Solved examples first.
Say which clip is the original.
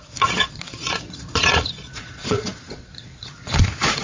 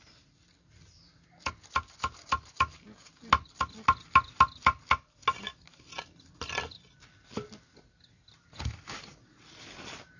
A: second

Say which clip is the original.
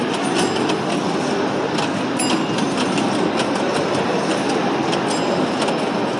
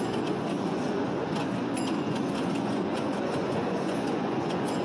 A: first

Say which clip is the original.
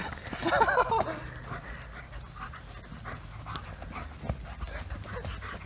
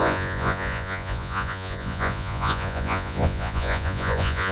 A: first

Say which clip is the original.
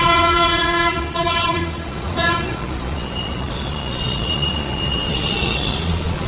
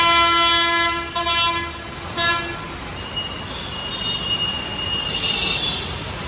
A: second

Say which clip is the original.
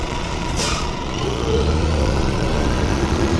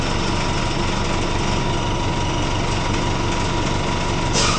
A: second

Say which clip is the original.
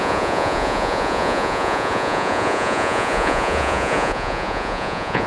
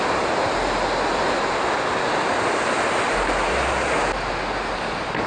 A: second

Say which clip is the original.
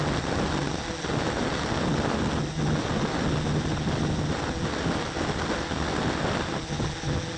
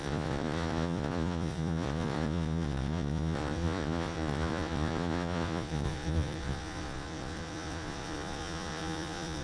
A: first